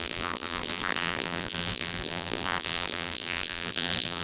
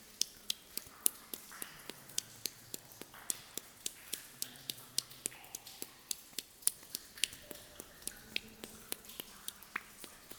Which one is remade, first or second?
first